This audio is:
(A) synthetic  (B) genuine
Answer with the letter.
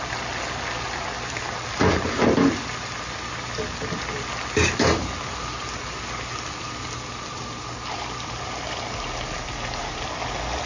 B